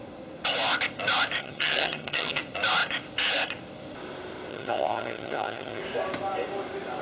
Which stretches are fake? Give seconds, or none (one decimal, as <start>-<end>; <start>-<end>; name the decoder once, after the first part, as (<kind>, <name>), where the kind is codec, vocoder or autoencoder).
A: 1.4-2.4 (vocoder, HiFi-GAN); 4.5-5.8